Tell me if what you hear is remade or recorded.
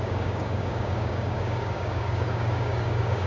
remade